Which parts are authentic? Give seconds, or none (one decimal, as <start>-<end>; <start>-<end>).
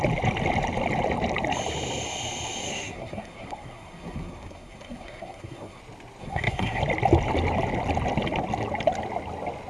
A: 0.0-2.7; 5.8-6.2; 6.8-9.7